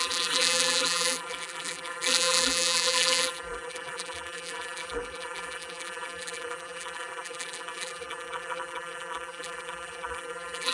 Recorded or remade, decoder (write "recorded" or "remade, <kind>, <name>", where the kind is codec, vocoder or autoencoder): remade, vocoder, BigVGAN v2